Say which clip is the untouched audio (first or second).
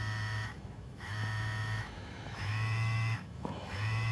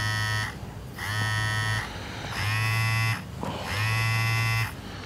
second